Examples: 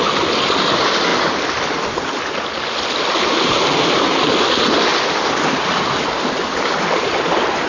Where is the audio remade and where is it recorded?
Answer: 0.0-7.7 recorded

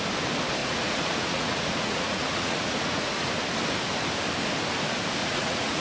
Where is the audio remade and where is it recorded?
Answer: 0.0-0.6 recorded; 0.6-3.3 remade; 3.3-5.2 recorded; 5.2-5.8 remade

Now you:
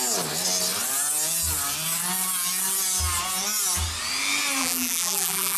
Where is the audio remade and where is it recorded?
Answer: 0.0-4.6 recorded; 4.6-5.6 remade